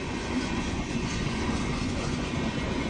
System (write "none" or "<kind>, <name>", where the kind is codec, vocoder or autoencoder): vocoder, Vocos